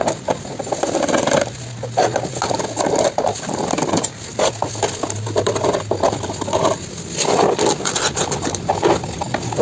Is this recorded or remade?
recorded